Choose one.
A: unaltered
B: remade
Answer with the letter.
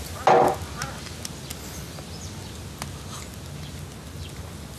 A